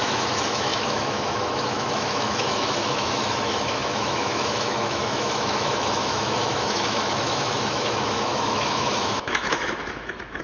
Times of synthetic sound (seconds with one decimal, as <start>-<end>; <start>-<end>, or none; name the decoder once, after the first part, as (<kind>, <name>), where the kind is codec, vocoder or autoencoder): 0.0-10.4 (autoencoder, DAC-VAE)